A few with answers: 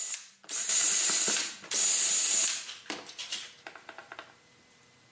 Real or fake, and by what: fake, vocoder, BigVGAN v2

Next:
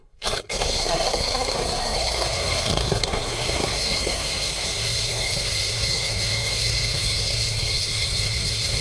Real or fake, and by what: fake, codec, SNAC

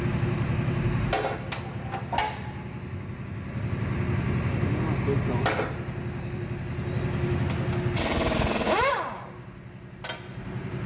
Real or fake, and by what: real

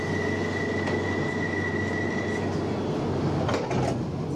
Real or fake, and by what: real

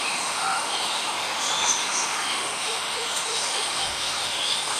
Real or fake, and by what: fake, autoencoder, DAC-VAE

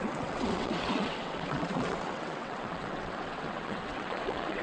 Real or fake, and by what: fake, vocoder, WaveNeXt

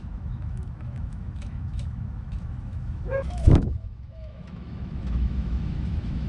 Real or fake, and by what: fake, autoencoder, DAC-VAE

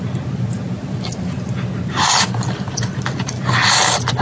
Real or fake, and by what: real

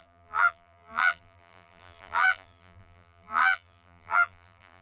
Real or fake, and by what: fake, vocoder, BigVGAN v2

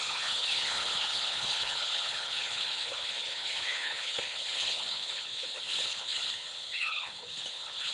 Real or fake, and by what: fake, codec, HILCodec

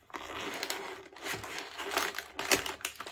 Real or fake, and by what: real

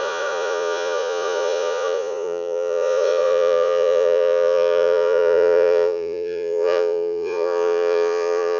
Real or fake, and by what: fake, vocoder, Vocos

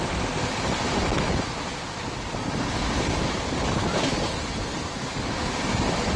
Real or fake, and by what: real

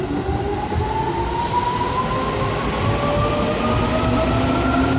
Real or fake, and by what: real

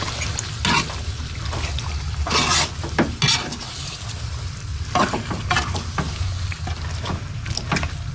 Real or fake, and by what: real